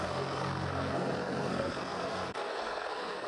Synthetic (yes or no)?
yes